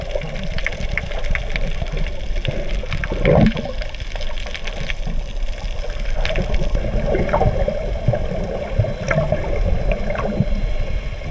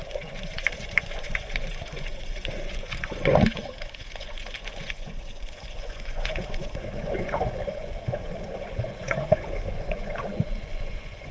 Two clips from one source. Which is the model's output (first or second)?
second